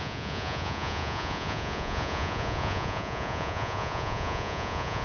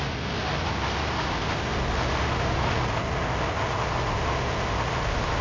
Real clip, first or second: second